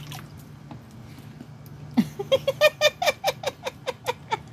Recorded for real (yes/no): yes